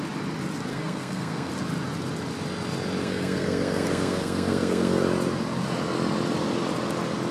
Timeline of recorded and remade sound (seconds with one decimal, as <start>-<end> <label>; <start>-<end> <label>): 0.0-0.7 recorded; 0.7-1.5 remade; 1.5-3.0 recorded; 3.0-5.0 remade; 5.0-7.3 recorded

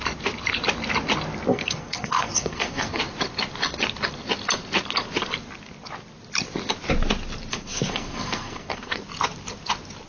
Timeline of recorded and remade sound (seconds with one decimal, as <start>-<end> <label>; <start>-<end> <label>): 0.0-1.5 recorded; 1.5-3.0 remade; 3.0-7.5 recorded; 7.5-9.0 remade; 9.0-10.1 recorded

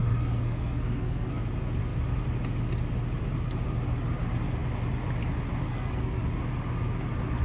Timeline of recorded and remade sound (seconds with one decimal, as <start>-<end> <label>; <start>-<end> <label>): 0.0-1.4 remade; 1.4-5.7 recorded; 5.7-6.2 remade; 6.2-7.4 recorded